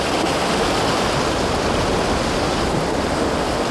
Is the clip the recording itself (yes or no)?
yes